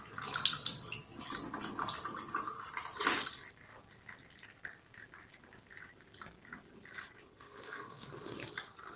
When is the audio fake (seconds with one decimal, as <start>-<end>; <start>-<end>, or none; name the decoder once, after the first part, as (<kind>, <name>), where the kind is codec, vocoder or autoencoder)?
7.3-8.1 (codec, SNAC)